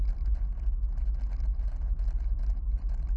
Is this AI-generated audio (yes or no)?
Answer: no